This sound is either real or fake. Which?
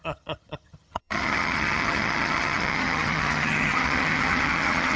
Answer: fake